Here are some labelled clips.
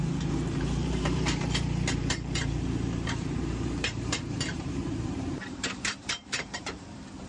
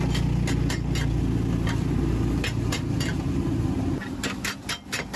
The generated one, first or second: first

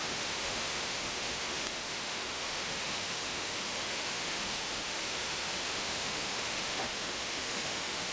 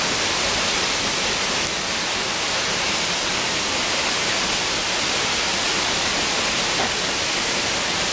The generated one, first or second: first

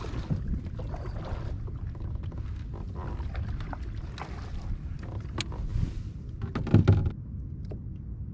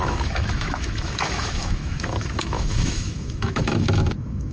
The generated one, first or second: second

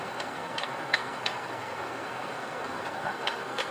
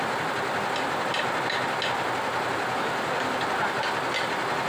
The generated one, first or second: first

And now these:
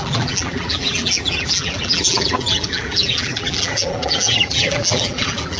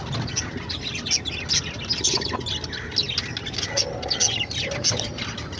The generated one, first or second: first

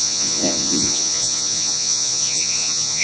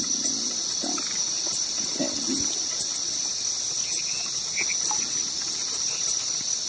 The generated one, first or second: first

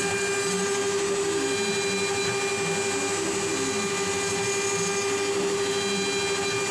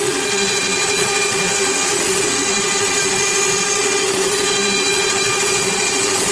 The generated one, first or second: second